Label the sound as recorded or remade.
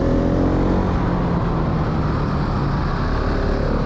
recorded